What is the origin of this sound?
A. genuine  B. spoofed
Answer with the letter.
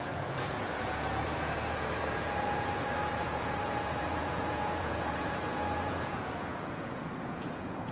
B